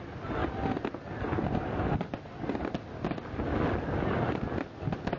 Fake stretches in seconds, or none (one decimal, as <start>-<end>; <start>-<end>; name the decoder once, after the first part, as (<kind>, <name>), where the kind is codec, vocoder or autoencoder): none